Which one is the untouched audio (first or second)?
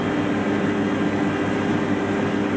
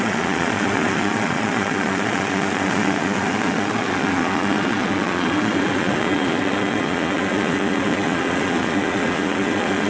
first